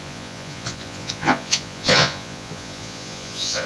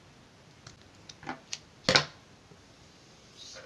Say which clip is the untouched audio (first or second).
second